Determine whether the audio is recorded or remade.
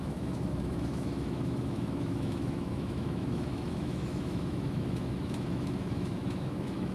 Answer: remade